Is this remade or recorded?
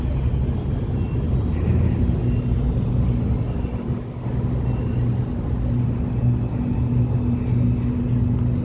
recorded